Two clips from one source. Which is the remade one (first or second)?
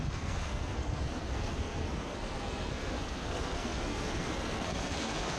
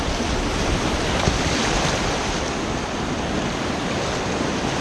first